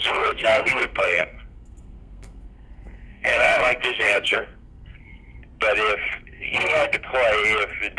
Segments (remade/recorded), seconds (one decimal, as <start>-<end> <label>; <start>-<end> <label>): 0.0-5.4 remade; 5.4-6.1 recorded; 6.1-7.1 remade; 7.1-8.0 recorded